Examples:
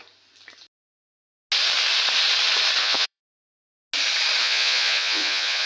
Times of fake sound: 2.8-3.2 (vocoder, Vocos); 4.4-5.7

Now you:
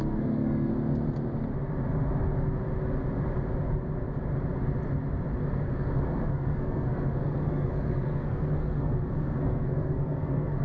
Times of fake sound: 0.0-0.7 (codec, SNAC); 5.5-10.6

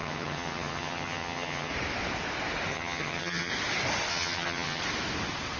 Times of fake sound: 0.0-1.7 (vocoder, HiFi-GAN); 2.7-3.5; 4.1-4.8

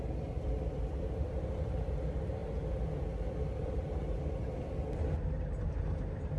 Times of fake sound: none

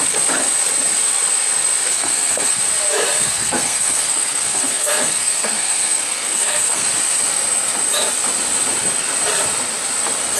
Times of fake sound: 1.9-2.6 (codec, SNAC); 3.2-6.9

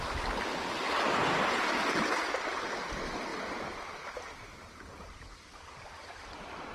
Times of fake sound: 3.3-3.8 (vocoder, BigVGAN v2)

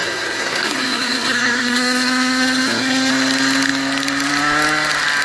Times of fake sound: 0.0-3.1 (codec, SNAC)

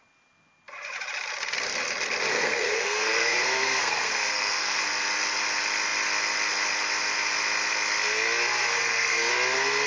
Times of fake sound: 2.3-4.8 (codec, SNAC); 8.7-9.3